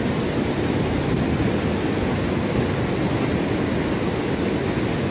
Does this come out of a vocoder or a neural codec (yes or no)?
no